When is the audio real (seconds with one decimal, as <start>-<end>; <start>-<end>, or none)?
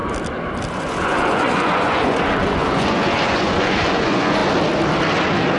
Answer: 0.0-0.7; 4.4-5.6